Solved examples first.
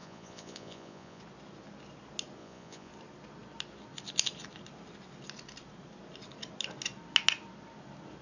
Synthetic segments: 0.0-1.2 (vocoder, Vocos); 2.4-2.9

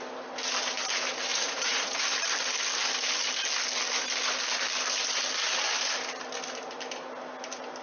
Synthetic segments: 1.3-2.0 (vocoder, Vocos)

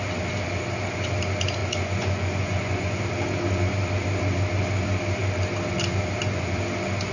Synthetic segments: 1.6-3.0 (vocoder, Vocos)

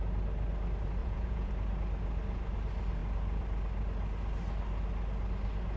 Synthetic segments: 1.0-1.5 (vocoder, Vocos)

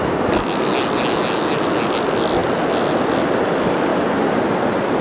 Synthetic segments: none